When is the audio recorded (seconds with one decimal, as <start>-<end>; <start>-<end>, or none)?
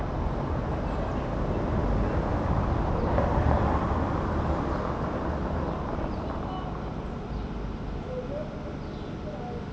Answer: 0.0-9.7